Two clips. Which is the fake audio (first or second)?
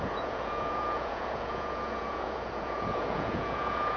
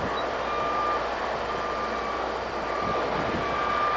first